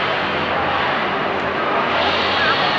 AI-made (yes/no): no